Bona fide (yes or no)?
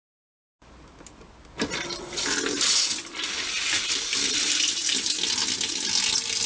yes